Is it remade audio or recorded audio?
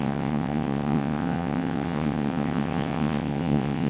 remade